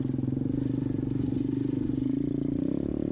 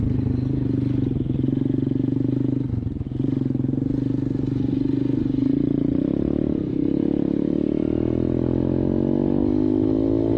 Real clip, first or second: second